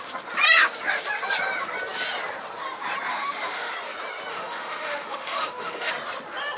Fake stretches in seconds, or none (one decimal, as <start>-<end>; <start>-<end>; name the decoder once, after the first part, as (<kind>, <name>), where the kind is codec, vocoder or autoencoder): 3.1-3.7 (autoencoder, DAC-VAE); 4.3-5.9